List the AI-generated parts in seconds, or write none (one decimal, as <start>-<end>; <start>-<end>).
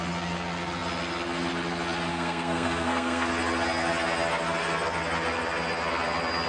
2.1-3.3